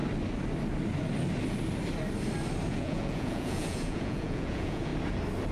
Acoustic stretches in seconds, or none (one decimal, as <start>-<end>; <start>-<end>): 0.0-2.7; 4.9-5.5